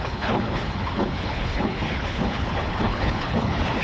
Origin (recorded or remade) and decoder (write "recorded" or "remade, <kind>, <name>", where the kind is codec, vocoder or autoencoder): remade, codec, HILCodec